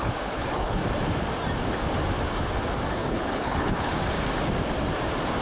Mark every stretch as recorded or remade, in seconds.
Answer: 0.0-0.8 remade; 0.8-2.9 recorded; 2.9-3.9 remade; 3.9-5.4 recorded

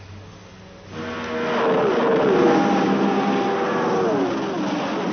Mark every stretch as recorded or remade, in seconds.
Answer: 0.0-5.1 recorded

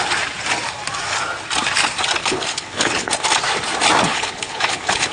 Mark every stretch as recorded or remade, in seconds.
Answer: 0.0-2.2 recorded; 2.2-3.1 remade; 3.1-4.1 recorded; 4.1-5.1 remade

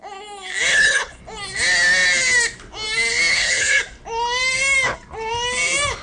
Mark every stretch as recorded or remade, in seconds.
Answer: 0.0-0.7 recorded; 0.7-1.2 remade; 1.2-3.3 recorded; 3.3-3.8 remade; 3.8-6.0 recorded

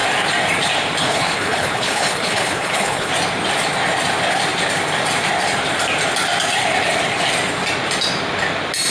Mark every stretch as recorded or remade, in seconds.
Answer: 0.0-1.0 recorded; 1.0-3.1 remade; 3.1-8.9 recorded

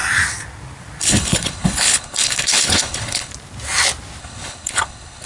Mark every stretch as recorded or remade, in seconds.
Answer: 0.0-1.0 recorded; 1.0-3.3 remade; 3.3-4.2 recorded; 4.2-5.3 remade

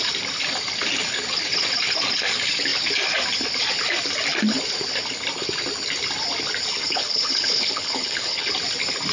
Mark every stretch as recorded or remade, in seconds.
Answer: 0.0-6.7 recorded; 6.7-8.5 remade; 8.5-9.1 recorded